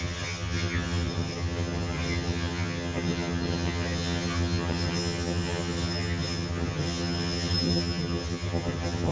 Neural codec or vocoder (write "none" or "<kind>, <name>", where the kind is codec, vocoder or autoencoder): vocoder, HiFi-GAN